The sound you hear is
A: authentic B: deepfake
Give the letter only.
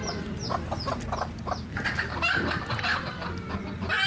A